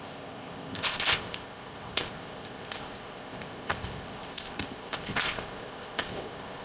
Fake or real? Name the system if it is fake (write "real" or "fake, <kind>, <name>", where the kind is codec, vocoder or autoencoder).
fake, codec, ZipCodec